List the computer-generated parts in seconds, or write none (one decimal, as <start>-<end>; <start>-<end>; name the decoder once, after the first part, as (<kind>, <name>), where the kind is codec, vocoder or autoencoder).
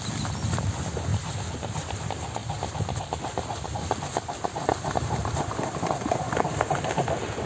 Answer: 1.1-2.0 (vocoder, BigVGAN v2); 4.7-5.7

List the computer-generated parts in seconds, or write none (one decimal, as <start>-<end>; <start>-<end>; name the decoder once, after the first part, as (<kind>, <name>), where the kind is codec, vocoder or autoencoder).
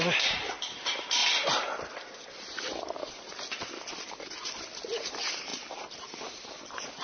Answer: 0.0-1.2 (vocoder, BigVGAN v2); 5.1-7.0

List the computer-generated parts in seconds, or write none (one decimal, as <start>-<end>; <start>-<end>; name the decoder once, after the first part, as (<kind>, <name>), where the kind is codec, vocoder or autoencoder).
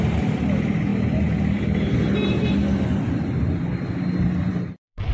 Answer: 4.5-5.1 (vocoder, BigVGAN v2)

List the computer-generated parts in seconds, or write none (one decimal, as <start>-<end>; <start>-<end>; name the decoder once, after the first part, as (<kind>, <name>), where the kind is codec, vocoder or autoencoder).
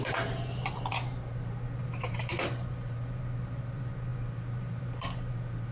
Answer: 0.0-5.7 (vocoder, BigVGAN v2)